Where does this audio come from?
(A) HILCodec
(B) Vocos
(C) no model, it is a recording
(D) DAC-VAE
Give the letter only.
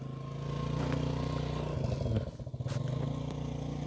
C